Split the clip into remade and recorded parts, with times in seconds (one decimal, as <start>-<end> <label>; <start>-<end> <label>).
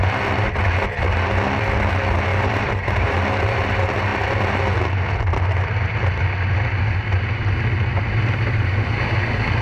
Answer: 0.0-2.3 recorded; 2.3-3.2 remade; 3.2-7.9 recorded; 7.9-9.1 remade; 9.1-9.6 recorded